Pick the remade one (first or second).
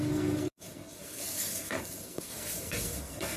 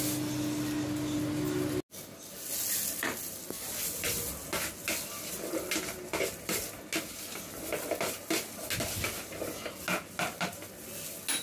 first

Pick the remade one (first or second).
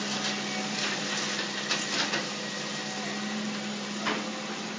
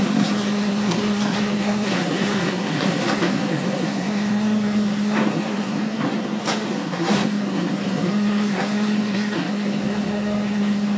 second